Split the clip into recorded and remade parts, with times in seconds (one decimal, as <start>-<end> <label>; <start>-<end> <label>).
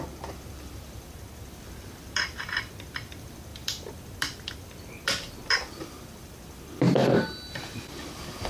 0.0-8.5 remade